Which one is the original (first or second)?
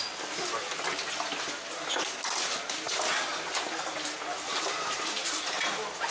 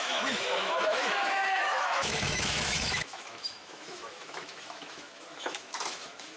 first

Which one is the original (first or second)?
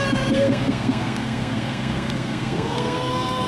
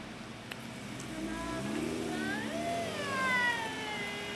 second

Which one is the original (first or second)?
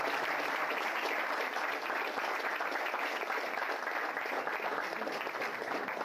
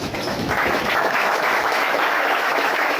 first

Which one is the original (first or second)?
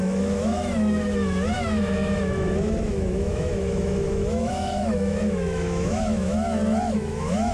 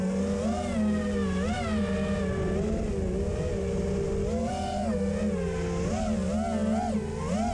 second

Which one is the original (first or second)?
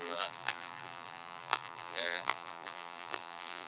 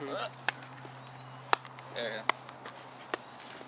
second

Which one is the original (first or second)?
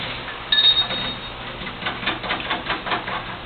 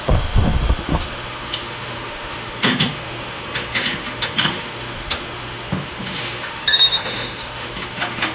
first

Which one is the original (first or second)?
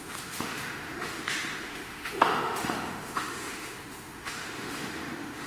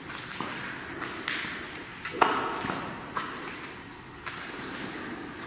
second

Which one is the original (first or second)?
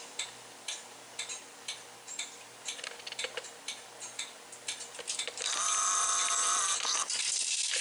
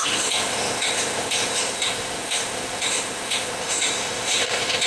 first